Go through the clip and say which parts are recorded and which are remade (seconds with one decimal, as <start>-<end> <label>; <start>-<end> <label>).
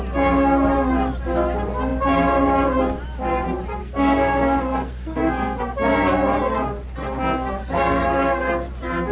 0.0-3.8 recorded; 3.8-5.6 remade; 5.6-7.6 recorded; 7.6-8.7 remade; 8.7-9.1 recorded